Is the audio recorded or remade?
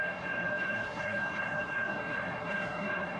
remade